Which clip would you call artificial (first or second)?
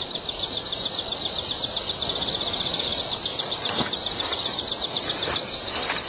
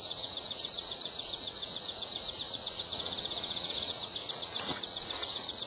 second